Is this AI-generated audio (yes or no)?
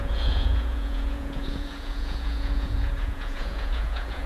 yes